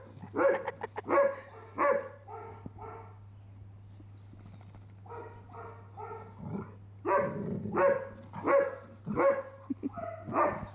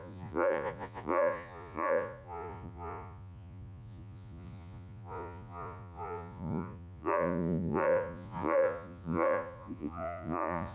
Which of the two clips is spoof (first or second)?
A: second